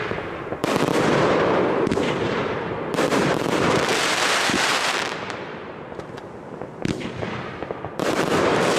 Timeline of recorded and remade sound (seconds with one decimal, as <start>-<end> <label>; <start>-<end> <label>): 0.0-0.6 remade; 0.6-1.3 recorded; 1.3-8.8 remade